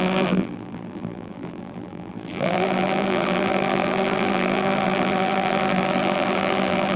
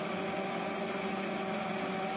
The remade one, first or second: first